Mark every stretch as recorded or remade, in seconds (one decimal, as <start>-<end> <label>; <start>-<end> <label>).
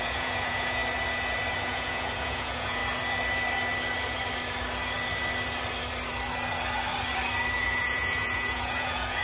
0.0-0.8 remade; 0.8-1.6 recorded; 1.6-2.8 remade; 2.8-7.6 recorded; 7.6-9.2 remade